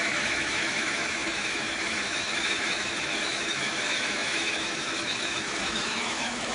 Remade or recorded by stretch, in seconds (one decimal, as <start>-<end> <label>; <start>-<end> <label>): 0.0-6.5 remade